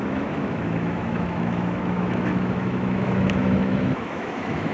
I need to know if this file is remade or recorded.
remade